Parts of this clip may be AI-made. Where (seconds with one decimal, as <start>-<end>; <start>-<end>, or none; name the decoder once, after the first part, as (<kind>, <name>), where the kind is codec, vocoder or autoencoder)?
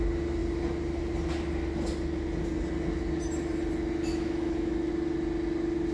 4.1-4.9 (autoencoder, DAC-VAE)